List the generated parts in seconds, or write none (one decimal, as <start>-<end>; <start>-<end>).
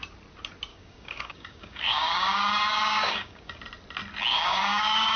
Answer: 0.7-3.6; 4.3-5.2